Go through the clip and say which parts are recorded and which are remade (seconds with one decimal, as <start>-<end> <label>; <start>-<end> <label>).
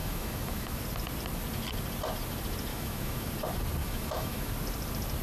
0.0-0.8 remade; 0.8-2.7 recorded; 2.7-3.3 remade; 3.3-3.8 recorded; 3.8-4.5 remade; 4.5-5.2 recorded